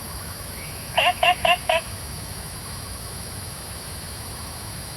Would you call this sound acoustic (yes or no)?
no